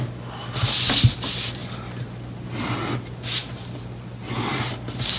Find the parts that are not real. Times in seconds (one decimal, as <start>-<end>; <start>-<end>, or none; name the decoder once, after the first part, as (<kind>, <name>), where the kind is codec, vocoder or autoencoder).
none